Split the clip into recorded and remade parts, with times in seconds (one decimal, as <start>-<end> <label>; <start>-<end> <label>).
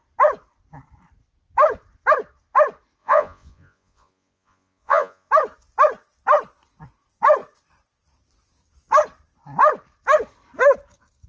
0.0-3.0 recorded; 3.0-5.3 remade; 5.3-11.3 recorded